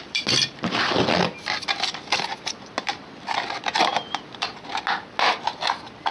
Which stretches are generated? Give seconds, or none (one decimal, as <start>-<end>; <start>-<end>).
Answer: none

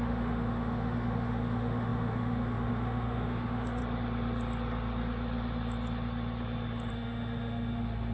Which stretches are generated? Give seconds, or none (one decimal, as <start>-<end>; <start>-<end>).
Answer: 0.0-3.8; 6.9-8.1